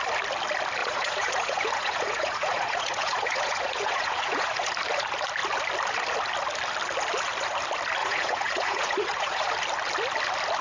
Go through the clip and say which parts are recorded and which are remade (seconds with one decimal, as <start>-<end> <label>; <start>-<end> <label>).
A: 0.0-0.8 recorded; 0.8-4.7 remade; 4.7-8.0 recorded; 8.0-9.5 remade; 9.5-10.6 recorded